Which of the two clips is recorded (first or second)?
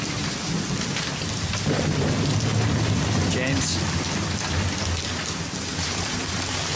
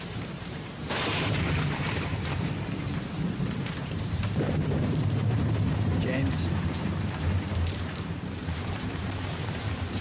first